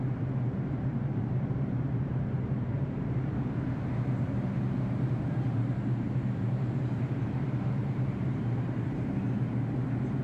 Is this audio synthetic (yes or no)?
yes